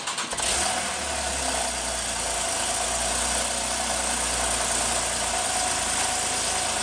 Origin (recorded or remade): recorded